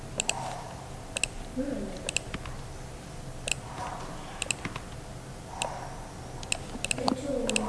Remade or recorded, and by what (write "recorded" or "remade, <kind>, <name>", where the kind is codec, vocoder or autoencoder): recorded